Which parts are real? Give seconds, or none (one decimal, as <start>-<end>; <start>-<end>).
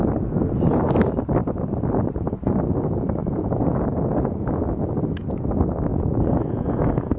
0.0-3.2; 4.6-5.9